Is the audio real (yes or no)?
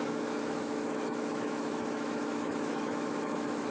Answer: no